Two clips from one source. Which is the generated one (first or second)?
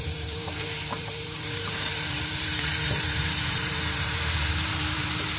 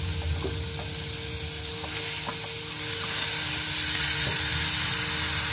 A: first